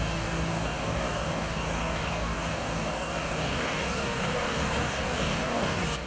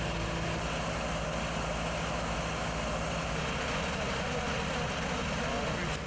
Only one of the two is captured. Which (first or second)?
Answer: second